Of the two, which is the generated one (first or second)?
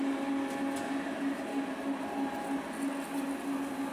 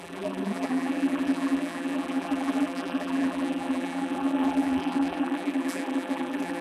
second